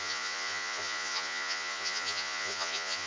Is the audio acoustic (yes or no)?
no